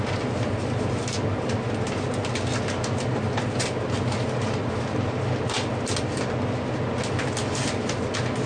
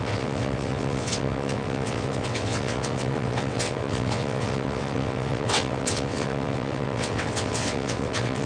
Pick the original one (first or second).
first